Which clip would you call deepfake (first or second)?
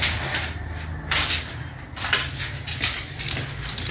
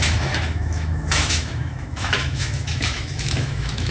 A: second